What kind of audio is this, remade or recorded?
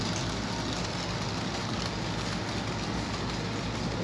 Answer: recorded